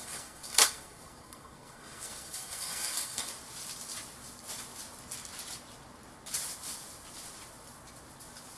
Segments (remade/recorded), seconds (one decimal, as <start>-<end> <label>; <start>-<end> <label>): 0.0-3.3 remade; 3.3-8.6 recorded